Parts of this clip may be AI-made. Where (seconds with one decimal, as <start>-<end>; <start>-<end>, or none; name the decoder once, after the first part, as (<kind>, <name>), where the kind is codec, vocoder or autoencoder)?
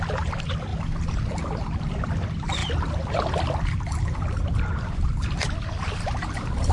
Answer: 0.7-1.9 (vocoder, BigVGAN v2); 2.6-6.7